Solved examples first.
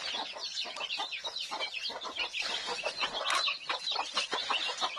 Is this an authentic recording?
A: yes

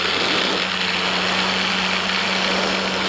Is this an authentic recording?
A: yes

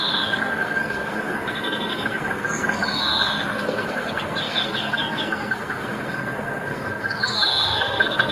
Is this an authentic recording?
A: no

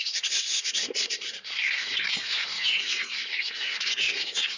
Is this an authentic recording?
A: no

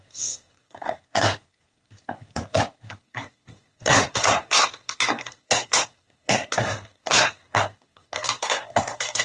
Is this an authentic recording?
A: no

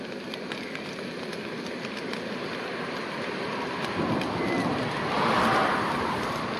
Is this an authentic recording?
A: yes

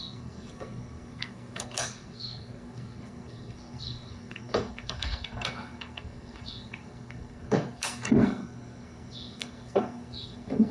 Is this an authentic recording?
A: no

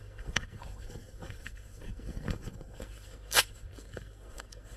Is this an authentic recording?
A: no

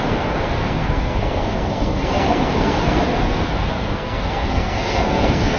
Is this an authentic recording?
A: no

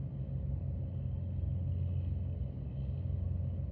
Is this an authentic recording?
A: yes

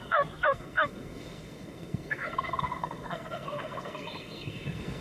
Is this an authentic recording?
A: no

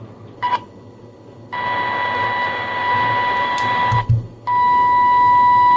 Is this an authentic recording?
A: yes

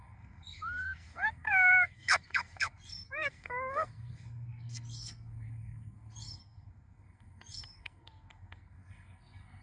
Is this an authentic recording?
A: no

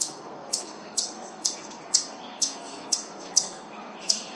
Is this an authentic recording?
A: no